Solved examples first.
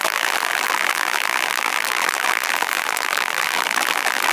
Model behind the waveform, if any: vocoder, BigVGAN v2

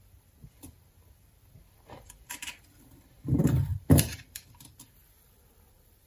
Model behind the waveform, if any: vocoder, BigVGAN v2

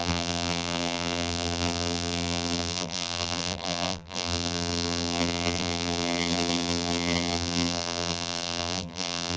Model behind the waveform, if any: vocoder, BigVGAN v2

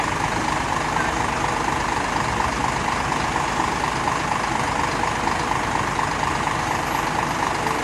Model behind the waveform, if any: none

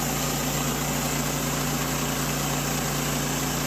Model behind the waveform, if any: none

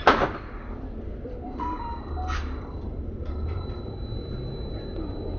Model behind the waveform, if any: vocoder, BigVGAN v2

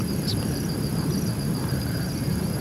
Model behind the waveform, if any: vocoder, BigVGAN v2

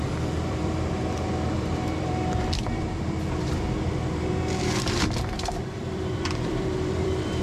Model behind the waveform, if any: vocoder, BigVGAN v2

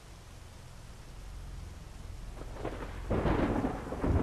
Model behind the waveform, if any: none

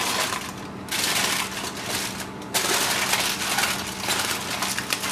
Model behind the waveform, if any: none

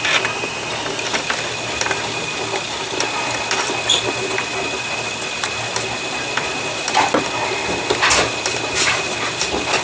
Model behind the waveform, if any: vocoder, BigVGAN v2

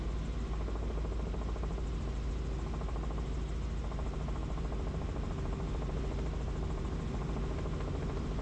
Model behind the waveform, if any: none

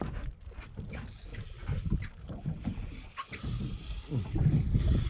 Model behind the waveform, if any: none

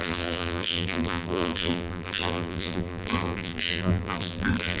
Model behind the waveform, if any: vocoder, BigVGAN v2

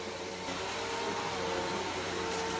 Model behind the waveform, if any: none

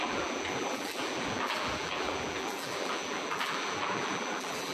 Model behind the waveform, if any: vocoder, BigVGAN v2